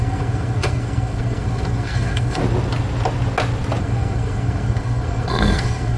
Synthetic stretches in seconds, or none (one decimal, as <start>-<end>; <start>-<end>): 0.0-2.4; 3.8-6.0